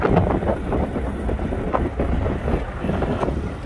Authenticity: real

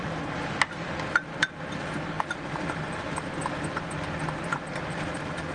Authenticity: real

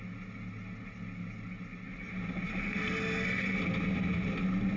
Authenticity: real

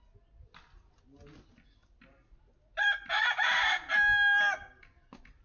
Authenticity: real